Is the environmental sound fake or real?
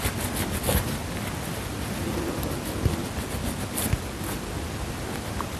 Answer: real